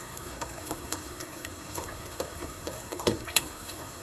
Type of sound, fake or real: fake